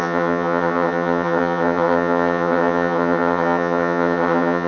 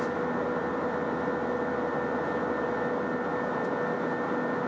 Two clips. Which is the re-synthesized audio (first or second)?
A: first